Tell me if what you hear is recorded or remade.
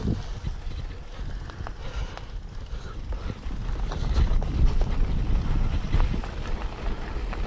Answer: recorded